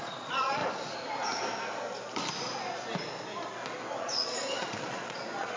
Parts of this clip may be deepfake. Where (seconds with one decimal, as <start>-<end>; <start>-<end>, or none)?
0.0-0.6; 4.0-5.6